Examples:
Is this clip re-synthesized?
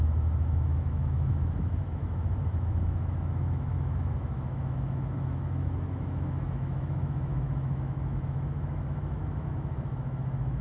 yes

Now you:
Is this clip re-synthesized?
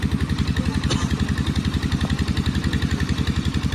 no